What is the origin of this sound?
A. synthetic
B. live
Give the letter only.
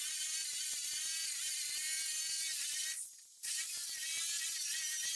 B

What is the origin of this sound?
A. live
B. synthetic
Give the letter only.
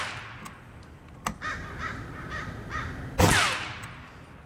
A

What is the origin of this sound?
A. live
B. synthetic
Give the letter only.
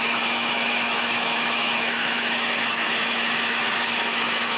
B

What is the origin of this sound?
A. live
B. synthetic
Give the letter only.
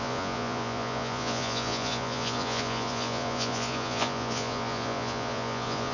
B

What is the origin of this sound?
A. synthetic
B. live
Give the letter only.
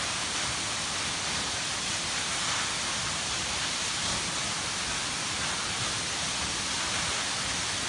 B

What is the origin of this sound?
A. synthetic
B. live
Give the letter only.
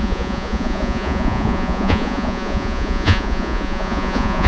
A